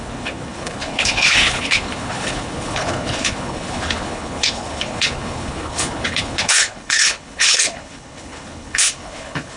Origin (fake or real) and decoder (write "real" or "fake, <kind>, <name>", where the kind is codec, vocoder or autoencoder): fake, codec, HILCodec